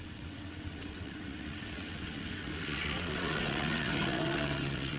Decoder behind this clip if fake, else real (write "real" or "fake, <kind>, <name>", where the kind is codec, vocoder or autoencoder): fake, vocoder, WaveNeXt